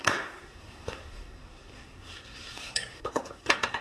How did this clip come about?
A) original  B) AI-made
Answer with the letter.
B